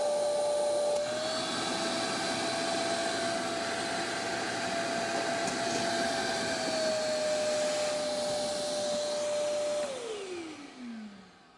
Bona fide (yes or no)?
yes